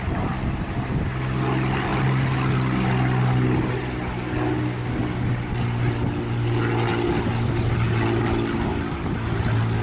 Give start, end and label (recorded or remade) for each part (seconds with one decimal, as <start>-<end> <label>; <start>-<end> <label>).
0.0-9.8 recorded